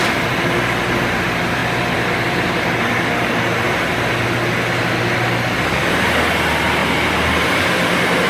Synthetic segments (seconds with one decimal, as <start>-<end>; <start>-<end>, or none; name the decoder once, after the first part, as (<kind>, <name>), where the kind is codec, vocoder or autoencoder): 6.8-8.3 (vocoder, BigVGAN v2)

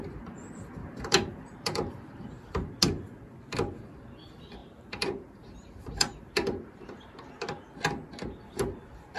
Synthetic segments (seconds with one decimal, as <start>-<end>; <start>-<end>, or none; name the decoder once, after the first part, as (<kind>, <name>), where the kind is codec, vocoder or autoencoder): 0.8-2.1 (vocoder, BigVGAN v2); 4.6-7.3

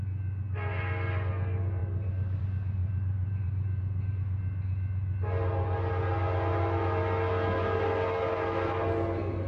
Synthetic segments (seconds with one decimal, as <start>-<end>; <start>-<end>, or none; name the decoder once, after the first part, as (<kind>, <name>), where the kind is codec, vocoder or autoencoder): 1.8-2.4 (vocoder, BigVGAN v2); 2.8-4.1